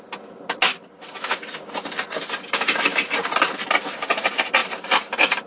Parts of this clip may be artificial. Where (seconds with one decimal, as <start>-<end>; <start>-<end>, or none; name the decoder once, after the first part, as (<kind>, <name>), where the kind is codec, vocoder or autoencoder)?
none